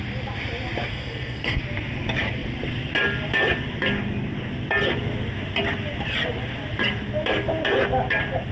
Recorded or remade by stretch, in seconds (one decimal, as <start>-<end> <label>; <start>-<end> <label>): 0.0-0.9 recorded; 0.9-1.6 remade; 1.6-8.5 recorded